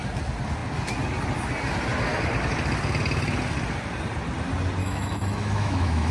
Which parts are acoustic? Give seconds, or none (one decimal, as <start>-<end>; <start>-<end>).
0.0-4.8